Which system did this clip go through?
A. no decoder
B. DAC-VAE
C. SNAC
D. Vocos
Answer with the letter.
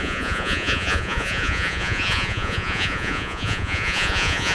D